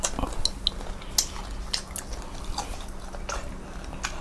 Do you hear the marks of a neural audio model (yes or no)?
no